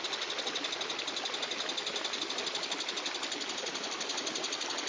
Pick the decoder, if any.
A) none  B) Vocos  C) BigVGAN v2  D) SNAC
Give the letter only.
A